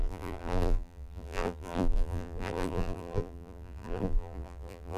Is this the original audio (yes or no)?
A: no